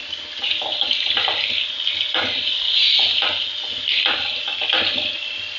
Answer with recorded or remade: recorded